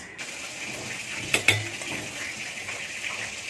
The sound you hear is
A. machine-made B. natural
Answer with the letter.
B